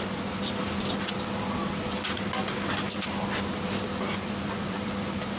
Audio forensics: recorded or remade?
recorded